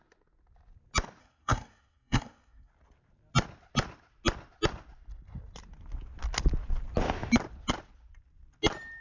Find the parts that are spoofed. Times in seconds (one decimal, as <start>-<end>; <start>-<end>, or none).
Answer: 1.2-2.7